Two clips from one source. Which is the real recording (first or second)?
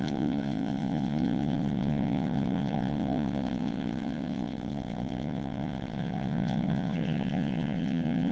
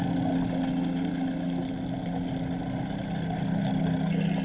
second